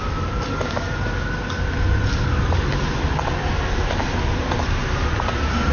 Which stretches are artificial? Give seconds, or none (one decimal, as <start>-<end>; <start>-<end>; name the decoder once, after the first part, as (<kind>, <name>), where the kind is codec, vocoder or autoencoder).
none